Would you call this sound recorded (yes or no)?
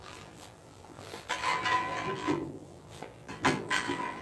no